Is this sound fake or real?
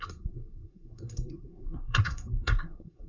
fake